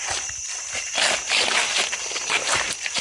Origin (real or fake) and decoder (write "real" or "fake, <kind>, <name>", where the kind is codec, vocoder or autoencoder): real